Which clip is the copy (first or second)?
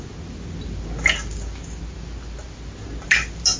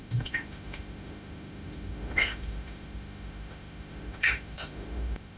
second